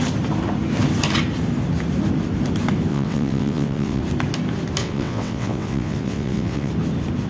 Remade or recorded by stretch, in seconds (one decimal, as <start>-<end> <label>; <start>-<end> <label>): 0.0-2.9 recorded; 2.9-4.0 remade; 4.0-4.8 recorded; 4.8-6.7 remade; 6.7-7.3 recorded